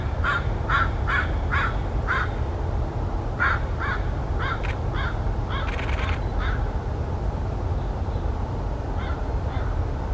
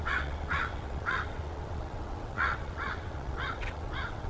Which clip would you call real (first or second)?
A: first